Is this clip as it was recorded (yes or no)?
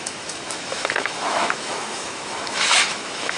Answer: no